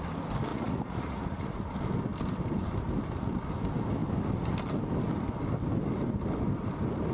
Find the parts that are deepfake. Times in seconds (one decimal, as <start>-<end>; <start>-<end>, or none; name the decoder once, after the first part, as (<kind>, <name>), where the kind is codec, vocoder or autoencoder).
0.5-1.6 (vocoder, Vocos)